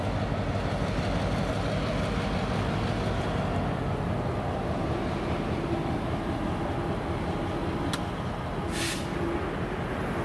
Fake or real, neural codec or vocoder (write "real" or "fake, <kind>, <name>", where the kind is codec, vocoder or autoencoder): real